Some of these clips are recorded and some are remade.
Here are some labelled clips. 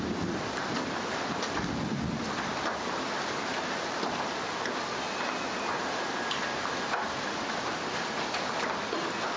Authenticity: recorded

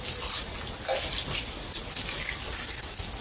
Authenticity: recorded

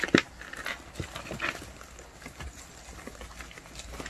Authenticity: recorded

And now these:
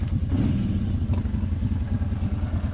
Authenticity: recorded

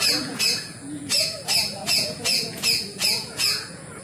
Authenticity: remade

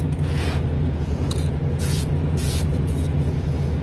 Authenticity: remade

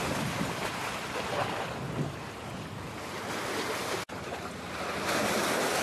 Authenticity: recorded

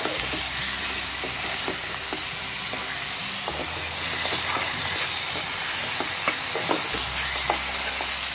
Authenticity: recorded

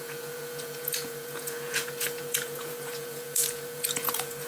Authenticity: remade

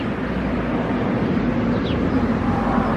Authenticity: recorded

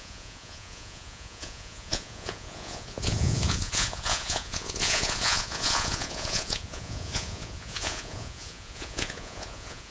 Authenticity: remade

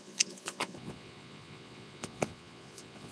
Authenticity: remade